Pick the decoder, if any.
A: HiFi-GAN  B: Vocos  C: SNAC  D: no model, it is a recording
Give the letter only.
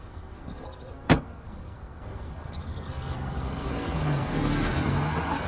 C